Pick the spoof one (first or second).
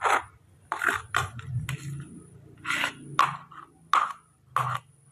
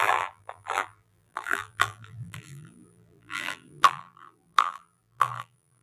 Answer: second